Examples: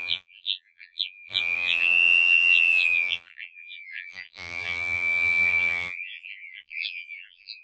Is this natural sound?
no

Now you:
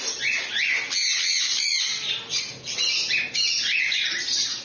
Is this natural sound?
yes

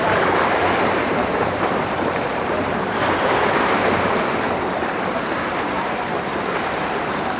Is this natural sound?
no